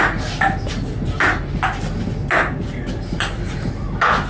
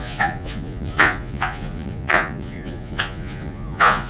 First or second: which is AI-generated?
second